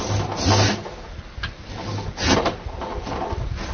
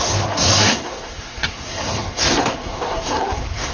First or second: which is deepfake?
second